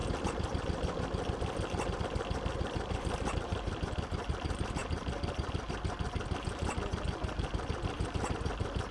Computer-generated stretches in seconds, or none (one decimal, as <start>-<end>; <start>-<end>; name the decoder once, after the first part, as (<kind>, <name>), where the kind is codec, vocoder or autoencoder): none